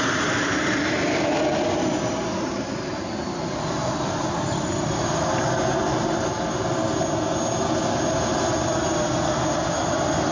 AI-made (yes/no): no